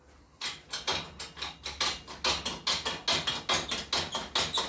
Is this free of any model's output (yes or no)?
yes